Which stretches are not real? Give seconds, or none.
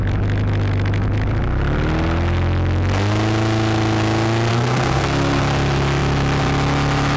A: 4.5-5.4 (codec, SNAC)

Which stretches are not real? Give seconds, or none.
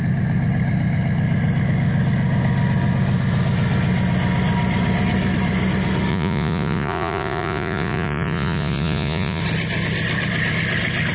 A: 6.1-9.4 (vocoder, Vocos)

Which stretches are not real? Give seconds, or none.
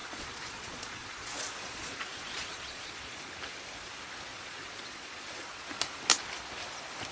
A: 0.0-3.3 (vocoder, Vocos); 4.3-5.7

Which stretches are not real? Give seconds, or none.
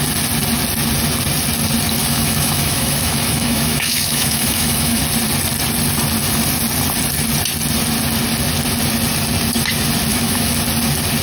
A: 2.0-5.0 (autoencoder, DAC-VAE); 10.1-10.6